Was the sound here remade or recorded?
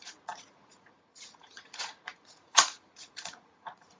remade